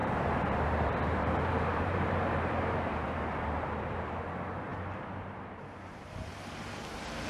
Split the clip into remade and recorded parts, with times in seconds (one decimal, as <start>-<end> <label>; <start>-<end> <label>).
0.0-4.2 remade; 4.2-4.7 recorded; 4.7-6.1 remade; 6.1-7.3 recorded